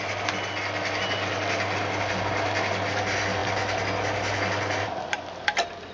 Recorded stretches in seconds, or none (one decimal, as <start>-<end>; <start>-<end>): 0.0-5.9